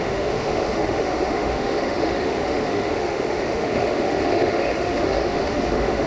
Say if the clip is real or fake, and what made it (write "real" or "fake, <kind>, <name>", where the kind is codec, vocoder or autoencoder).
fake, autoencoder, DAC-VAE